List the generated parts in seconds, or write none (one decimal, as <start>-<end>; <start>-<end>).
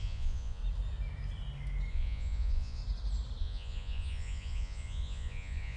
0.0-0.6; 1.9-2.8; 3.4-5.8